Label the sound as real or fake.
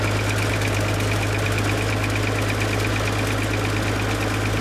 real